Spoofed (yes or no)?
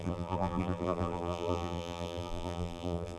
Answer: yes